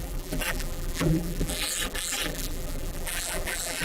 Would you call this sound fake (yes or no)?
yes